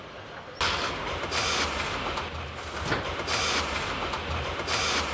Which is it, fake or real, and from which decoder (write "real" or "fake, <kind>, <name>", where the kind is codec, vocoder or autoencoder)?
real